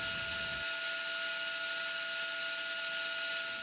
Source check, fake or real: real